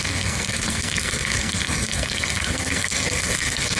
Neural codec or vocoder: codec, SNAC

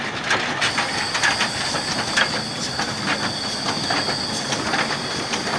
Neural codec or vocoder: none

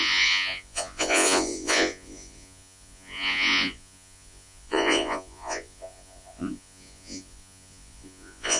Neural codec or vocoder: vocoder, Vocos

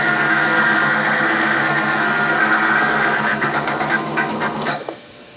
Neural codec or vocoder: codec, SNAC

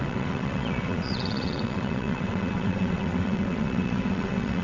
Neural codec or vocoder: vocoder, WaveNeXt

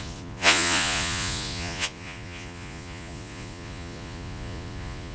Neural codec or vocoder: vocoder, Vocos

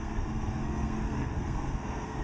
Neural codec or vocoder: codec, SNAC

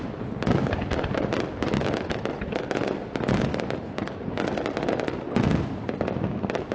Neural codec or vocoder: none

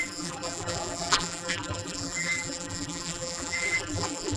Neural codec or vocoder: vocoder, BigVGAN v2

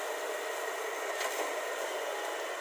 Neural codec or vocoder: vocoder, BigVGAN v2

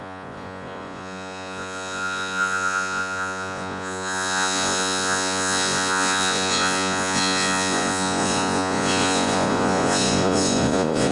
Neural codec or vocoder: vocoder, Vocos